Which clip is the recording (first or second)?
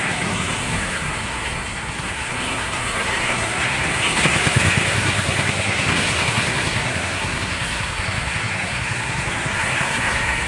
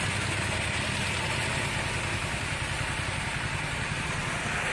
second